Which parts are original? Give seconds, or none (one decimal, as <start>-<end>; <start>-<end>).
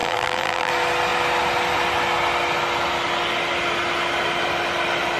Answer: 0.7-5.2